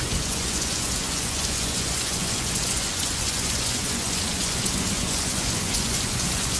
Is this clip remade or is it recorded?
remade